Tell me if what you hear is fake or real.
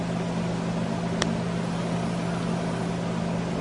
real